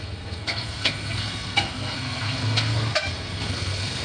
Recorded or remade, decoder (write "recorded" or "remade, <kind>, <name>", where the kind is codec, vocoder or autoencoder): remade, codec, SNAC